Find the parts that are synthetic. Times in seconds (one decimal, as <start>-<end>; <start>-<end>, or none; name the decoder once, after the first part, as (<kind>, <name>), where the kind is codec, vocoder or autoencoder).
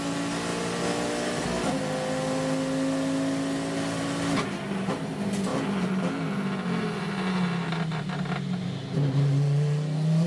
none